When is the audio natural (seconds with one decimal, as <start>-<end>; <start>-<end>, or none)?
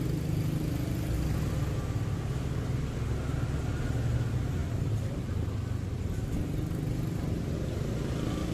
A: 0.0-8.5